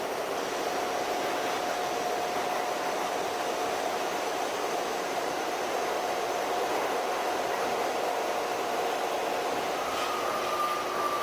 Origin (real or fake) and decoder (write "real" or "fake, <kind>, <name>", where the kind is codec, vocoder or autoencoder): real